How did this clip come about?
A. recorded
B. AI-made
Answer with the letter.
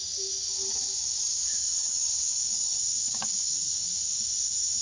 B